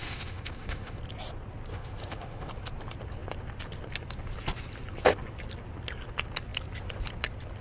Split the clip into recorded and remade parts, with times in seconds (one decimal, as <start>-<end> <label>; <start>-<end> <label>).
0.0-1.0 remade; 1.0-1.7 recorded; 1.7-2.5 remade; 2.5-7.6 recorded